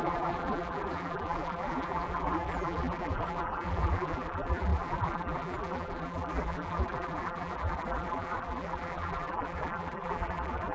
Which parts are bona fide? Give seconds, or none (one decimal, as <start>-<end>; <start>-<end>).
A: none